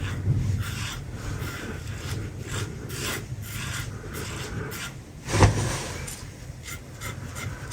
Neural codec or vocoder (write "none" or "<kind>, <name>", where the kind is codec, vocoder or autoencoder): none